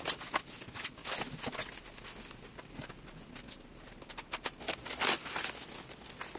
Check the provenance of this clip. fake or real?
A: real